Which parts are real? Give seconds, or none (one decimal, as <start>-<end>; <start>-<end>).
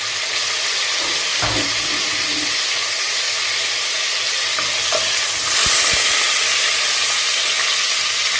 0.0-8.4